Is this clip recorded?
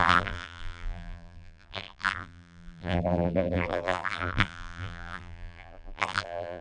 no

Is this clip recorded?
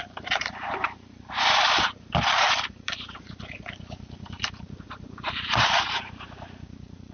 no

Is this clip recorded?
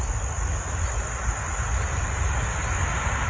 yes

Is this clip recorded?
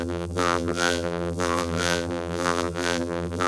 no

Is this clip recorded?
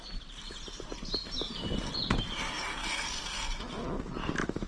yes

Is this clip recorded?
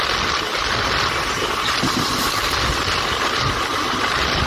yes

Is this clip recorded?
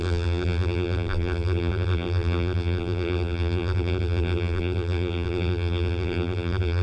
no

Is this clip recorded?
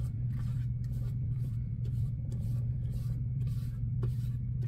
no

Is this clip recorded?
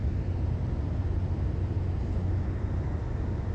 yes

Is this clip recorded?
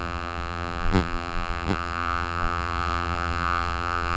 no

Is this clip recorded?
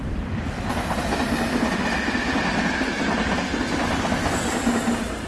yes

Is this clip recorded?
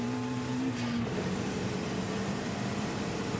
no